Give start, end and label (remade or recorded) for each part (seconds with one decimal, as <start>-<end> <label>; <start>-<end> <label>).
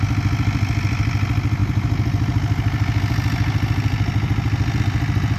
0.0-5.4 recorded